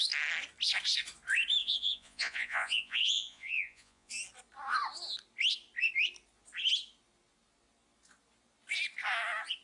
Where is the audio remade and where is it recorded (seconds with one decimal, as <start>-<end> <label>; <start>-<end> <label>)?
0.0-1.6 recorded; 1.6-4.1 remade; 4.1-9.6 recorded